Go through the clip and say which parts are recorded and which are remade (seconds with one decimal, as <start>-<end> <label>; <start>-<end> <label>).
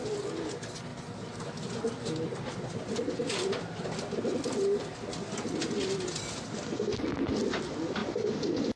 0.0-8.8 recorded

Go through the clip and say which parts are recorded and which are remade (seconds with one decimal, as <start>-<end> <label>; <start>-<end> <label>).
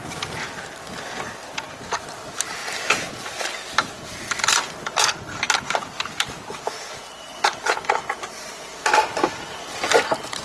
0.0-10.4 recorded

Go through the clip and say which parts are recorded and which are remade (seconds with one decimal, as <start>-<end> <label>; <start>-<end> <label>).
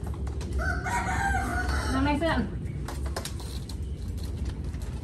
0.0-5.0 recorded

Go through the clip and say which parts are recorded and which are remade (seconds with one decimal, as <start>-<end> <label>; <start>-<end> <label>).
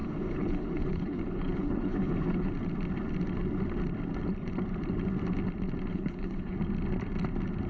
0.0-2.5 remade; 2.5-5.9 recorded; 5.9-6.6 remade; 6.6-7.7 recorded